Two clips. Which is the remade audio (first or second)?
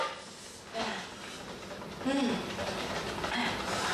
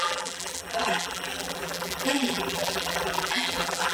second